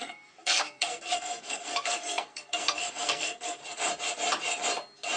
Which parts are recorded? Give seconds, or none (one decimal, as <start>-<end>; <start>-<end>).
3.6-5.2